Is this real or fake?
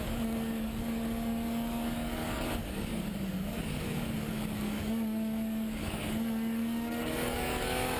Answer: fake